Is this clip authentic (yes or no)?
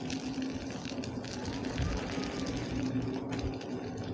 yes